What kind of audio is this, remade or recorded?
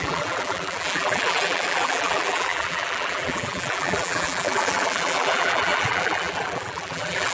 remade